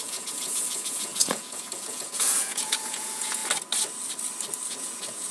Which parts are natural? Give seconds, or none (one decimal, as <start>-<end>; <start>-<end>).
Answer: 3.4-4.7